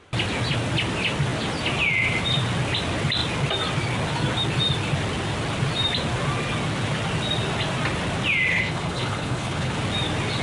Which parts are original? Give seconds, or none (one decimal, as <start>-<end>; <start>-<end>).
0.0-8.5; 9.7-10.4